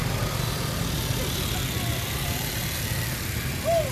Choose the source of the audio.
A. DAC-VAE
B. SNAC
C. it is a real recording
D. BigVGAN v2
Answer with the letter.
C